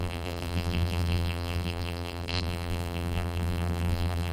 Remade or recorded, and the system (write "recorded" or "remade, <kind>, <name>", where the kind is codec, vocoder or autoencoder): remade, vocoder, BigVGAN v2